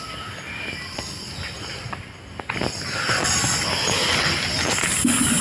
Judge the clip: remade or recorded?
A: recorded